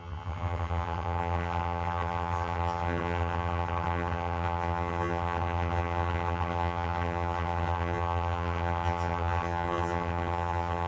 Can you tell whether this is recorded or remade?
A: remade